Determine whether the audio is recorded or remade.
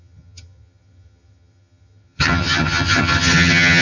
remade